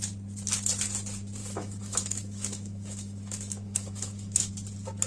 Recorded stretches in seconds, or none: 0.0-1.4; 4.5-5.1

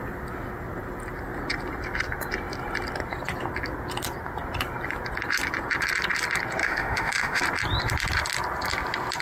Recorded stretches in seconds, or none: 0.0-6.6; 7.4-9.2

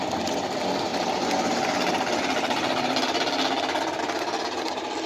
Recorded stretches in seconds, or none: 0.0-5.1

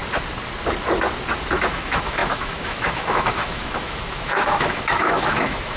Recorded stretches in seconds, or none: 0.0-1.7